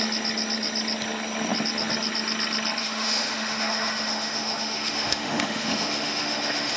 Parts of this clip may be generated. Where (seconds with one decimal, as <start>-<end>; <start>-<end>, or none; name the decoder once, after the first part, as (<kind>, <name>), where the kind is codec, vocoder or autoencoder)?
2.8-6.8 (autoencoder, DAC-VAE)